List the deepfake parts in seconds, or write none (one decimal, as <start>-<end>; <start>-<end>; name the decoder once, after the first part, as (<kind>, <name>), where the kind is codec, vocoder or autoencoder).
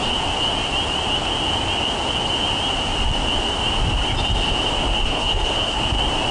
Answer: 5.0-5.8 (codec, SNAC)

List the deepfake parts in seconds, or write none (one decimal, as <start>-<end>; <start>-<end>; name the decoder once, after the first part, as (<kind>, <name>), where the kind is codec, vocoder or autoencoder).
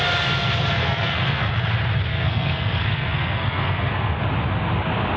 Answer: 0.8-1.5 (codec, SNAC); 2.1-4.2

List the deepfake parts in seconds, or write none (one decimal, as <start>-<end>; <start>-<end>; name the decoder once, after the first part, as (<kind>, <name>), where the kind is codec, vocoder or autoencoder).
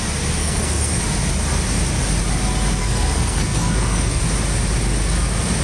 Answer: 0.4-1.0 (codec, SNAC); 2.8-4.2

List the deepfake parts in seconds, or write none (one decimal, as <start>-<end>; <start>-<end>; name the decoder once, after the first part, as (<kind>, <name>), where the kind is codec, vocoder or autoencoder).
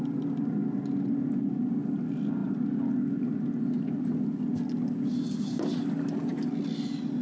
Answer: none